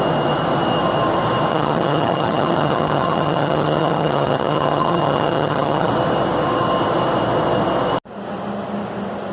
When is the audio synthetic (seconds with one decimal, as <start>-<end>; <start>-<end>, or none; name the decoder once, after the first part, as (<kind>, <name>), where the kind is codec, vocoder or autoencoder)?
1.5-5.9 (vocoder, HiFi-GAN)